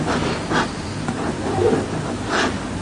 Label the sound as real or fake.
real